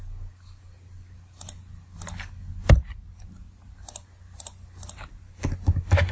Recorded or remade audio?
recorded